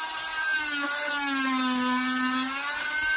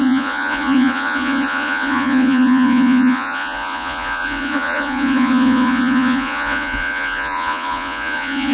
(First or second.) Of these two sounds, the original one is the first